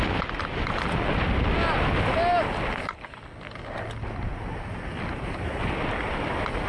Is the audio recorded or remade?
recorded